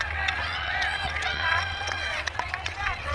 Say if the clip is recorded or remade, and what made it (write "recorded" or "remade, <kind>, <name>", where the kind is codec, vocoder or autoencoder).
remade, vocoder, WaveNeXt